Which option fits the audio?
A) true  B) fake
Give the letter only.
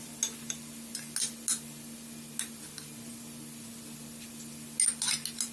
A